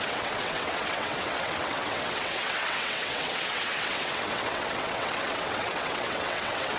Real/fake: fake